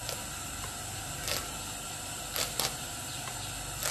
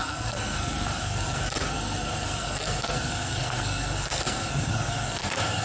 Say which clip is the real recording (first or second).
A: first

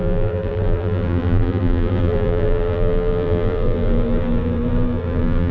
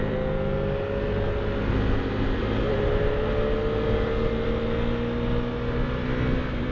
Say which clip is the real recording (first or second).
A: second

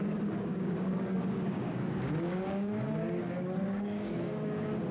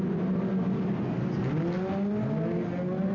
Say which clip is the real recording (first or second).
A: second